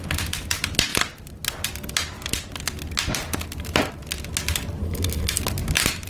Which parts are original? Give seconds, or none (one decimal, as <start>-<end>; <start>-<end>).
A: 0.0-4.8; 5.4-6.1